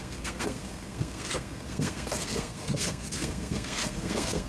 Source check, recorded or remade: remade